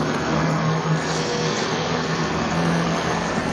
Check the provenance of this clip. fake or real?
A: fake